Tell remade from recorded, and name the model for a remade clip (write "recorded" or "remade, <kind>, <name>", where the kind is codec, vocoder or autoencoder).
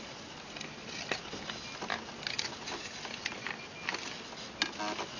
recorded